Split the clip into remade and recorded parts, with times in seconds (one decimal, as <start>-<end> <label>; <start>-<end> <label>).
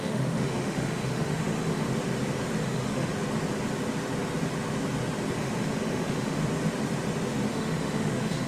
0.0-1.9 remade; 1.9-2.6 recorded; 2.6-3.1 remade; 3.1-5.4 recorded; 5.4-6.4 remade; 6.4-7.5 recorded; 7.5-8.5 remade